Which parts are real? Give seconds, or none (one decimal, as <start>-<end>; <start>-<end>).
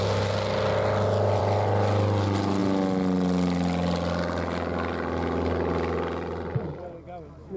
0.0-7.6